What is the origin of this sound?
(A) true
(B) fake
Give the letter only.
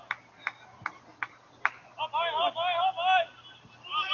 A